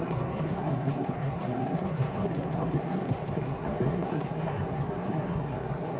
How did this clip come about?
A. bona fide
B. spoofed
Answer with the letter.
B